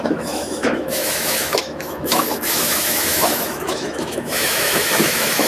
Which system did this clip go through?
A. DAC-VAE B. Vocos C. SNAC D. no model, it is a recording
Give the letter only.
A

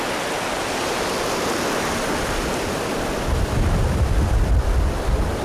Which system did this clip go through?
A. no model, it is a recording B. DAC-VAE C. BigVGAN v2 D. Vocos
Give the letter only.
A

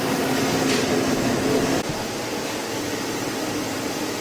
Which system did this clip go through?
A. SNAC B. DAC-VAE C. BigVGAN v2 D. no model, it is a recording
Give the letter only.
D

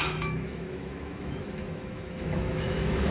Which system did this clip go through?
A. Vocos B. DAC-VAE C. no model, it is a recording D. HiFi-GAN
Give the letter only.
B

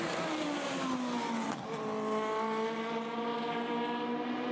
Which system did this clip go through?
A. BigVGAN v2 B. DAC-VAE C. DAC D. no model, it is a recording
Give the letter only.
D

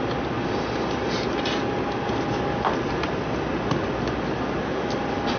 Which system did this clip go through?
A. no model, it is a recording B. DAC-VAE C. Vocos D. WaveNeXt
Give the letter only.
A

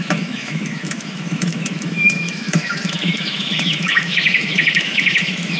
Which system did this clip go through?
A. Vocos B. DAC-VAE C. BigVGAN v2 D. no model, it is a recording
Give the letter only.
B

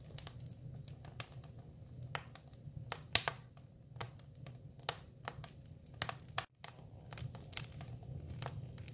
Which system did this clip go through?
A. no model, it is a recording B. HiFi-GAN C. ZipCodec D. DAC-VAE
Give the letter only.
A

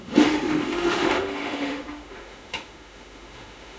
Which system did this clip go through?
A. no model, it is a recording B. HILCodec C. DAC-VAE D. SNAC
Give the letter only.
C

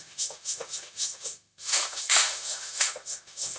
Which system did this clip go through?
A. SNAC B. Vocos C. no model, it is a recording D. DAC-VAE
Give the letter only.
D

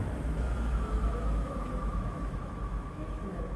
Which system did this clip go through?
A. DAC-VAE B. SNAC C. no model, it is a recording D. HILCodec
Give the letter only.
A